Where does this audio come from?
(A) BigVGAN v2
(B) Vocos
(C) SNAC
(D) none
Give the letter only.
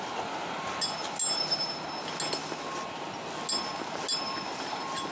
D